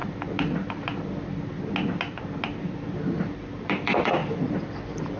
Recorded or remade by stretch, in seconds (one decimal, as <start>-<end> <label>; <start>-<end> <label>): 0.0-3.1 recorded; 3.1-5.2 remade